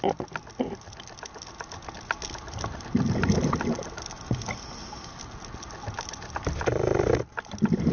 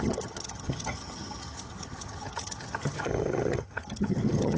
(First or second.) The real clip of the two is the first